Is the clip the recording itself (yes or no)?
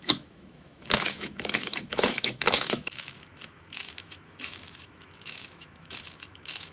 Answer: no